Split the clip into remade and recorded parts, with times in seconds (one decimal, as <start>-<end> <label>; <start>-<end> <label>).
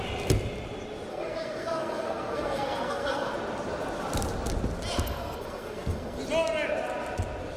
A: 0.0-1.1 recorded; 1.1-3.3 remade; 3.3-5.2 recorded; 5.2-6.2 remade; 6.2-7.6 recorded